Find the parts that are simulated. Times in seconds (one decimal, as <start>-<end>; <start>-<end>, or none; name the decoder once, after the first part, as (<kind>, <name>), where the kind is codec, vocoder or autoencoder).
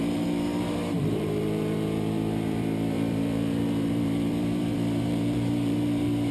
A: 0.0-6.3 (vocoder, BigVGAN v2)